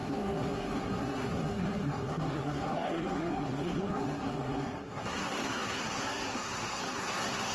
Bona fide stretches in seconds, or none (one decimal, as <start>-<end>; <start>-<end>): none

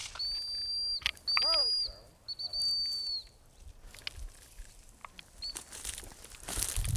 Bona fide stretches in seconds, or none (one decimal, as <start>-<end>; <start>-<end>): 0.0-7.0